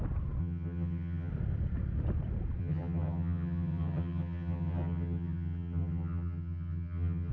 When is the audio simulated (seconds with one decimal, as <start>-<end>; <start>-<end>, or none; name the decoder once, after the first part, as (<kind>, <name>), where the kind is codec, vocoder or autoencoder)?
0.4-1.3 (vocoder, HiFi-GAN); 2.6-7.3